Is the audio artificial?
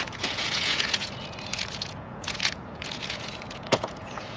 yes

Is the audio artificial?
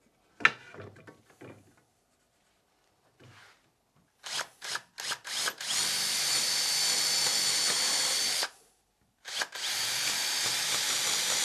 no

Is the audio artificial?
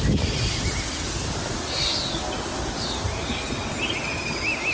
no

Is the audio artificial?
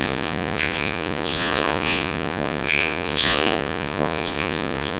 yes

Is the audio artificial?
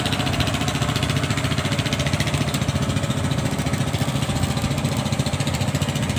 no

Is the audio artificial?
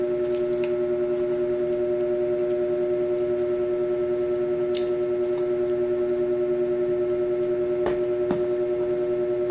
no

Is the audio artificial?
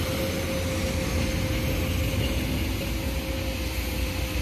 no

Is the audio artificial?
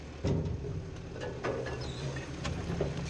no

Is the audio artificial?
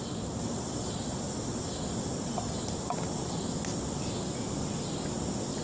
no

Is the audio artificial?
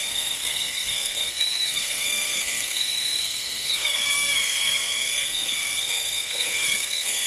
yes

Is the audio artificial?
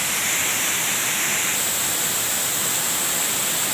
no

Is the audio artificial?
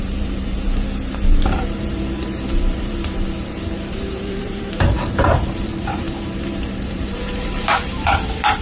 yes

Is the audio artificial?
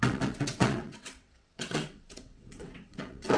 yes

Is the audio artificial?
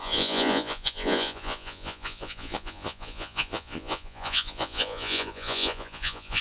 yes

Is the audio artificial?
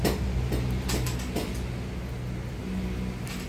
no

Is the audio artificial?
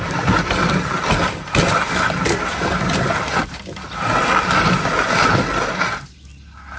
no